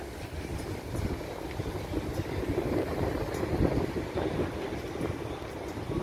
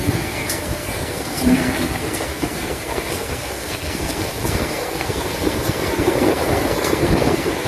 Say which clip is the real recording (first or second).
first